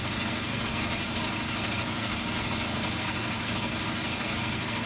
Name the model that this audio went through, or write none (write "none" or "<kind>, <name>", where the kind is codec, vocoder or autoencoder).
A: codec, SNAC